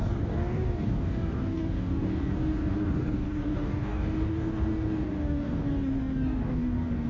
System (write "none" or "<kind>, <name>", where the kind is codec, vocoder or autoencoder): codec, DAC